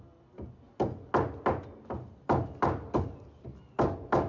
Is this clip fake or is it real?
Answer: real